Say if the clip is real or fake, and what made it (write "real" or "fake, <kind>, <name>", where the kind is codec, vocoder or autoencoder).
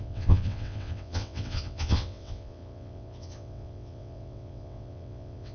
fake, vocoder, WaveNeXt